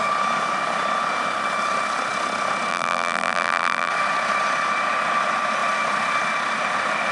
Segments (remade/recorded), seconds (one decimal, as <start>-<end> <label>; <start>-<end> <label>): 0.0-2.7 recorded; 2.7-3.9 remade; 3.9-7.1 recorded